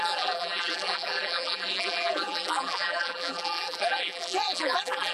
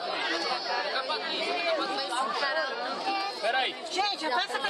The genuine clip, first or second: second